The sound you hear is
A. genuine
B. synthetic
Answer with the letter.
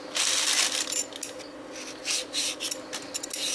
A